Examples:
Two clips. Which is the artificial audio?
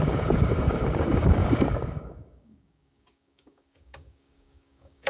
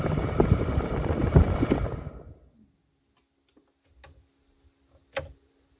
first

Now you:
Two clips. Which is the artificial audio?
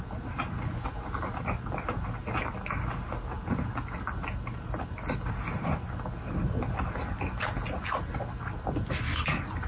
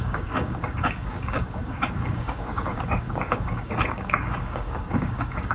second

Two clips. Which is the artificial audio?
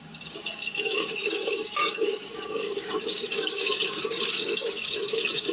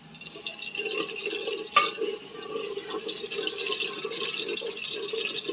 first